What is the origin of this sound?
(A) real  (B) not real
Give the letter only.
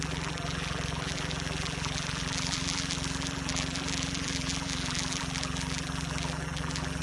B